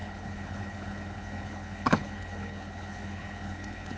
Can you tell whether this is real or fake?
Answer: fake